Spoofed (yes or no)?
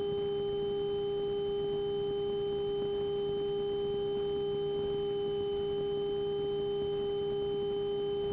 no